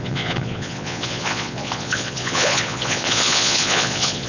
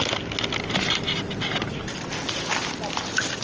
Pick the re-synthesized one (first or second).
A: first